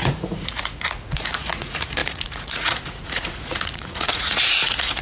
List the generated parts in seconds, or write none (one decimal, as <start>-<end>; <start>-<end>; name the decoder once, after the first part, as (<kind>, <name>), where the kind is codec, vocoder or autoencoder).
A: 0.0-5.0 (vocoder, Vocos)